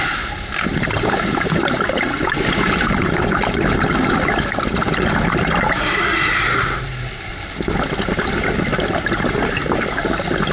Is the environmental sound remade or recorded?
recorded